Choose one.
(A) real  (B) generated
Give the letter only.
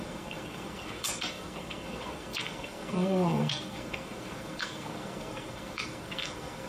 B